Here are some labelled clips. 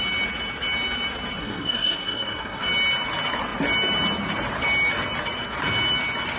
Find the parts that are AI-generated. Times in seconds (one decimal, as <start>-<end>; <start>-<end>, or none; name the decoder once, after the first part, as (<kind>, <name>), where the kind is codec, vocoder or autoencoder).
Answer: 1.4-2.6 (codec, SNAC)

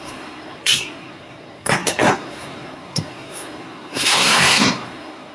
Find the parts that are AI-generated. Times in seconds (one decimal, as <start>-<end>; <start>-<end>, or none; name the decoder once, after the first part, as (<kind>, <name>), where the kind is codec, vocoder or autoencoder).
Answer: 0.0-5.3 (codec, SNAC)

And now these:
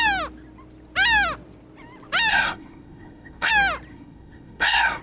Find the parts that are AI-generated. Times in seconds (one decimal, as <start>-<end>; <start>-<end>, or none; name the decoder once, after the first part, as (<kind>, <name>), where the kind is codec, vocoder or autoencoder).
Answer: 2.3-3.5 (codec, SNAC); 3.9-5.0